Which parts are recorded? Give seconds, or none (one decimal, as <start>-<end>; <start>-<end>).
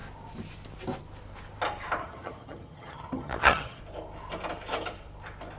0.0-2.0; 3.8-5.6